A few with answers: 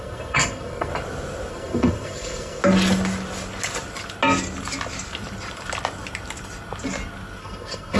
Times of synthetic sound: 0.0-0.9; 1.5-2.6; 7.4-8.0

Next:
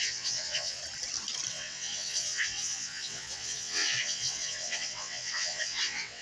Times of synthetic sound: 0.0-0.8; 1.5-6.2

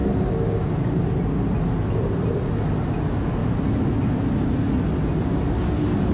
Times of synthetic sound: none